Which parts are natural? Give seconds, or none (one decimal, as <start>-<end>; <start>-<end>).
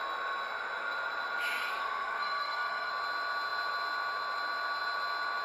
0.0-1.7; 2.9-5.4